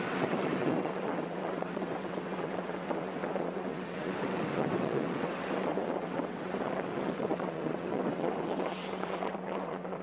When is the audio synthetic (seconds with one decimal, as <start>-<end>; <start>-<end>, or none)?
0.0-10.0